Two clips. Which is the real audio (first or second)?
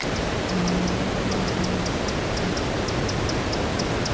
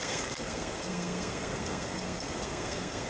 first